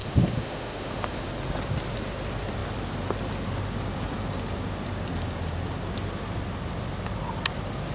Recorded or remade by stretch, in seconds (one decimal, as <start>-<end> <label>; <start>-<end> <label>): 0.0-1.3 remade; 1.3-7.9 recorded